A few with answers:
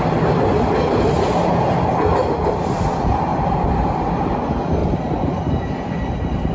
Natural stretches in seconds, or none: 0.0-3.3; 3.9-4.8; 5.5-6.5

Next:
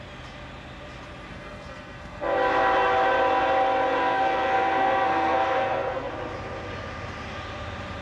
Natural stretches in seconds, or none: 0.0-1.3; 2.2-4.0; 6.1-8.0

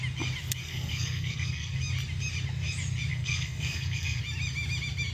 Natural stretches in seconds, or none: 0.0-0.6; 1.8-3.1; 4.2-5.1

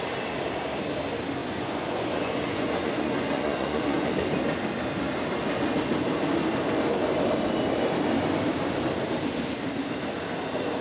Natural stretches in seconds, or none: 0.0-1.4; 4.1-10.8

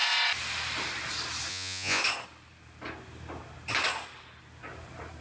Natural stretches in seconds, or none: 0.0-1.5; 2.0-5.2

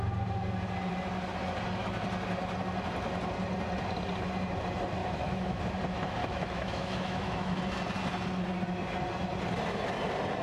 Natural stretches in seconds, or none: 0.0-5.0; 5.6-6.2; 7.6-10.4

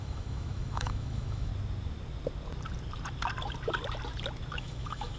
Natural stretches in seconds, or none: 1.5-4.6